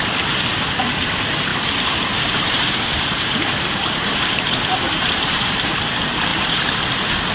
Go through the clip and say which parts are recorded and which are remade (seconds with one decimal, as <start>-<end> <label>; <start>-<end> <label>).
0.0-1.5 recorded; 1.5-5.8 remade; 5.8-6.3 recorded; 6.3-6.8 remade; 6.8-7.3 recorded